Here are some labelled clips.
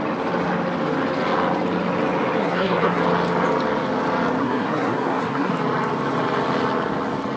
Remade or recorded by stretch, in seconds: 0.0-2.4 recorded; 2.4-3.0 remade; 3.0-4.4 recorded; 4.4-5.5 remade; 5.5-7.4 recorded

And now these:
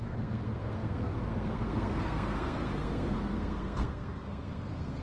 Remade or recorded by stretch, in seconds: 0.0-5.0 remade

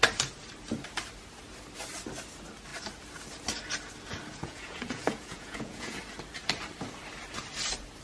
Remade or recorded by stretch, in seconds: 0.0-4.3 recorded; 4.3-6.0 remade; 6.0-8.0 recorded

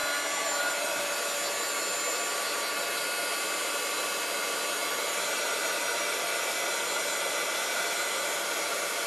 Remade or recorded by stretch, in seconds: 0.0-4.8 recorded; 4.8-6.4 remade; 6.4-9.1 recorded

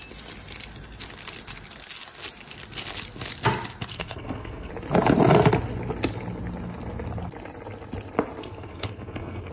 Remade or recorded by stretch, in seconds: 0.0-3.9 recorded; 3.9-4.7 remade; 4.7-8.4 recorded; 8.4-9.5 remade